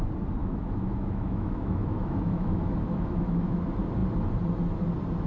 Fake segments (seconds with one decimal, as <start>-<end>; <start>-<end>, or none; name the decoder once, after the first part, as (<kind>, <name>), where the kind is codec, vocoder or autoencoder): 0.4-3.6 (autoencoder, DAC-VAE)